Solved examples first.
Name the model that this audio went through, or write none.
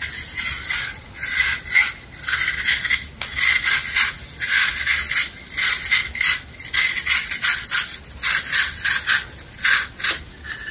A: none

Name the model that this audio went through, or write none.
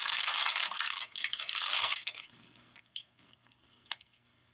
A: codec, SNAC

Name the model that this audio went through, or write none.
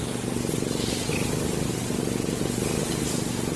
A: none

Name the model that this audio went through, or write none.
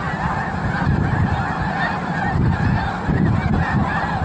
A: vocoder, BigVGAN v2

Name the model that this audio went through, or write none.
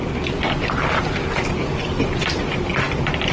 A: none